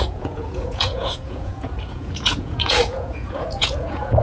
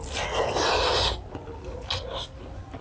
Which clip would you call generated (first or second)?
first